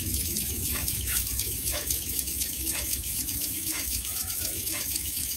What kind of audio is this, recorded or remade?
remade